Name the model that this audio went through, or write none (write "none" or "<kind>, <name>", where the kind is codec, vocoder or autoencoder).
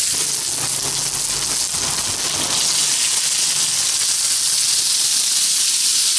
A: none